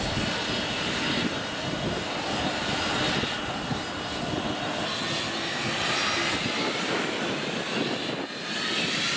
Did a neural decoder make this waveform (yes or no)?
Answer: no